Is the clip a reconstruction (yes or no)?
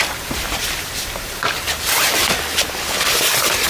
yes